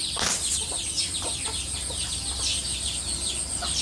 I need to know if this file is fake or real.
real